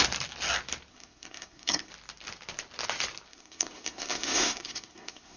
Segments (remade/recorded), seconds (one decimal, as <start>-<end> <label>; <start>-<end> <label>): 0.0-0.9 recorded; 0.9-1.9 remade; 1.9-3.3 recorded; 3.3-5.4 remade